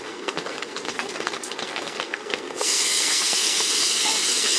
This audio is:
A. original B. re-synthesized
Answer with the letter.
B